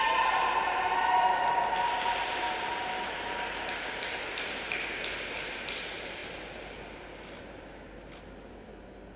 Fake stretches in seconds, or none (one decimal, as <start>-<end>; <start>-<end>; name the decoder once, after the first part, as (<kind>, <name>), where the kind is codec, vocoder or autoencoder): none